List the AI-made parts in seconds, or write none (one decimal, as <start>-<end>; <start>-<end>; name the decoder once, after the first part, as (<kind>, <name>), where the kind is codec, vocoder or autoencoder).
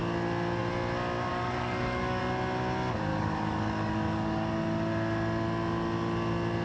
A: 1.3-2.2 (codec, DAC); 3.1-4.5